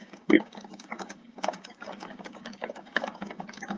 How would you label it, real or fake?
fake